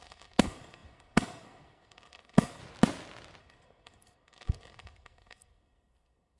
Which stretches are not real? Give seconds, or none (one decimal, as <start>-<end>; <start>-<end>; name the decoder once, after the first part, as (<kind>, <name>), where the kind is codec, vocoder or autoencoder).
0.0-2.6 (codec, SNAC); 3.4-6.4

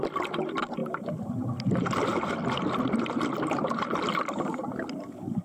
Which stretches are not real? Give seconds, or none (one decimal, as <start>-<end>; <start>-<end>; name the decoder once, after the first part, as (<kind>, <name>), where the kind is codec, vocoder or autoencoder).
none

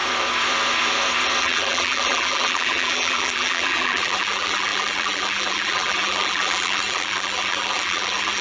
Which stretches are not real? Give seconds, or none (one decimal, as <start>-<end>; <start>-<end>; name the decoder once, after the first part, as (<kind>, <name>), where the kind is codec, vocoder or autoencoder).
1.4-8.4 (vocoder, BigVGAN v2)

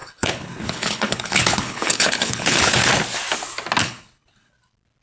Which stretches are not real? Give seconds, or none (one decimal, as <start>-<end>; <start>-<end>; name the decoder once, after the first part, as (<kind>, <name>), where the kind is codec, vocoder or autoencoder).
0.0-2.9 (codec, HILCodec); 3.8-4.5

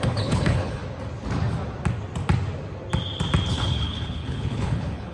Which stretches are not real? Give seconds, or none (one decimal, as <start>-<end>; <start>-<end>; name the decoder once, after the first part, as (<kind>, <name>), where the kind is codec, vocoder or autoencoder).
0.0-0.8 (codec, HILCodec); 3.5-5.1